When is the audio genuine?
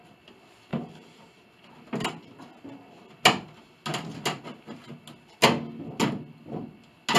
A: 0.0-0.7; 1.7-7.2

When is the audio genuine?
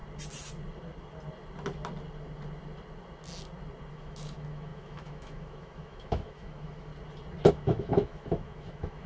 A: 0.0-3.9; 6.9-7.5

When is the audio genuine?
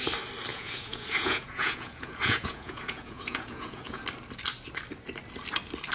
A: 0.0-0.5; 4.0-5.9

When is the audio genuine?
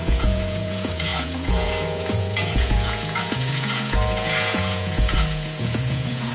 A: none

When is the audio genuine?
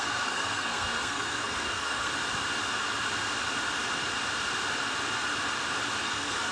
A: 2.1-6.0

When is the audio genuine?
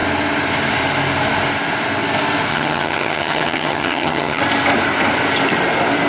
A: 0.0-2.5; 4.4-6.1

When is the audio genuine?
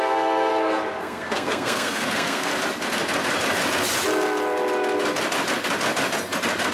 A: 0.5-1.0; 2.5-6.7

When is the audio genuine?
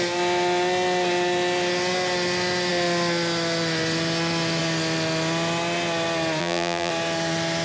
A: 0.0-6.4; 6.9-7.6